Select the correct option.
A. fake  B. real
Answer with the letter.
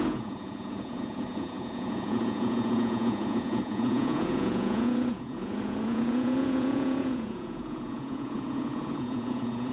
A